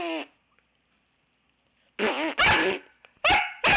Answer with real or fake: real